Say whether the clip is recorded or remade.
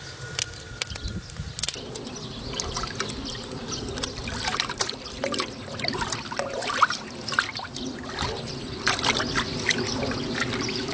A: recorded